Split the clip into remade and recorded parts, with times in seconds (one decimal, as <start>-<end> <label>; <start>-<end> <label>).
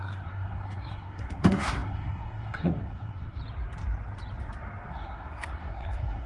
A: 0.0-3.4 remade; 3.4-4.9 recorded; 4.9-6.3 remade